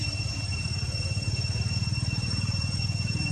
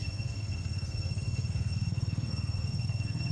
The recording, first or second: first